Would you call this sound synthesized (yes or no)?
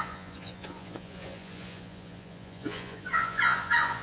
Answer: yes